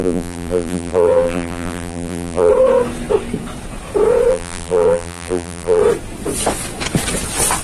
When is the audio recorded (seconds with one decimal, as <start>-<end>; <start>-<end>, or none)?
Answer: 2.5-4.3; 5.8-7.6